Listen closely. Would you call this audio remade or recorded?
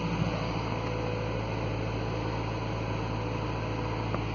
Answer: recorded